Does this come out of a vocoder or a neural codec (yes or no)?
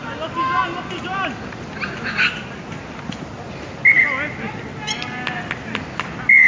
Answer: no